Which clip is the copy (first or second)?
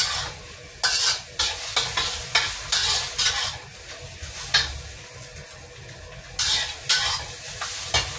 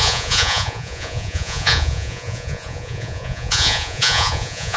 second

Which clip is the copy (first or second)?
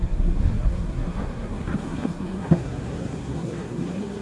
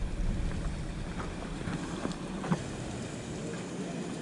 first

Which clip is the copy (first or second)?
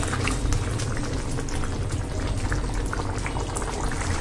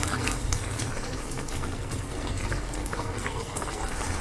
second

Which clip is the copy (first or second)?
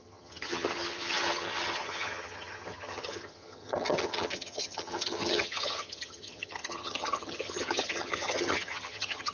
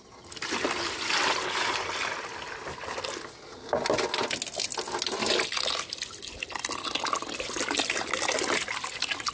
first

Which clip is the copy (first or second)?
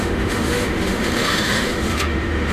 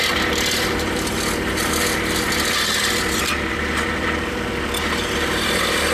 first